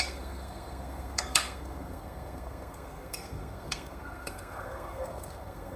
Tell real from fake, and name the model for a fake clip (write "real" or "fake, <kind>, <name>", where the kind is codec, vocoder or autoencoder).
fake, codec, SNAC